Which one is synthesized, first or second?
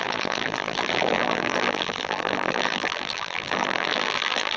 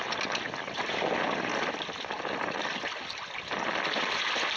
first